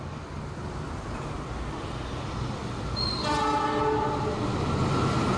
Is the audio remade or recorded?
recorded